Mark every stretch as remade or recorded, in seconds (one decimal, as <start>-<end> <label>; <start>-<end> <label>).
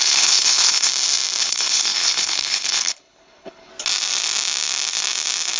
0.0-0.9 remade; 0.9-1.4 recorded; 1.4-3.7 remade; 3.7-5.6 recorded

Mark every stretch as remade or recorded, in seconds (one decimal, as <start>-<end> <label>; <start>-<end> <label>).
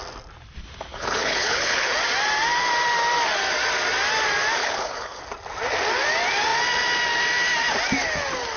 0.0-0.9 recorded; 0.9-1.9 remade; 1.9-4.6 recorded; 4.6-5.2 remade; 5.2-8.6 recorded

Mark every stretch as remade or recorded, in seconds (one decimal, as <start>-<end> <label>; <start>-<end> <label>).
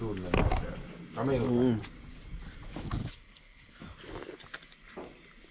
0.0-3.0 recorded; 3.0-3.8 remade; 3.8-5.5 recorded